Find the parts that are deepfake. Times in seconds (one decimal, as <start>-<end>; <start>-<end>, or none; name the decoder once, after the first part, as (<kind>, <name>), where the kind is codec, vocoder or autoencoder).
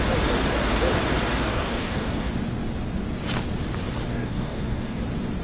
1.5-2.3 (codec, DAC); 4.1-5.0